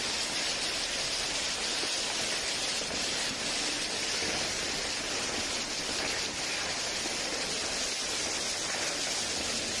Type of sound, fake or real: real